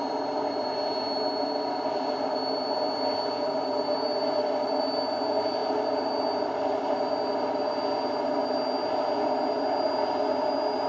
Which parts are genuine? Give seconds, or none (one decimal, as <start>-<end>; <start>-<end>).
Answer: 0.0-10.9